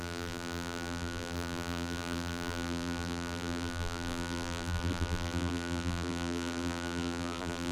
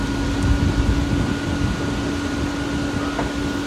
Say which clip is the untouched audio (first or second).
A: second